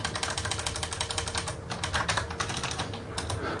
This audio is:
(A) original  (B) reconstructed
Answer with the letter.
A